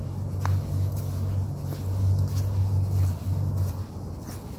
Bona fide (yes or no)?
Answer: yes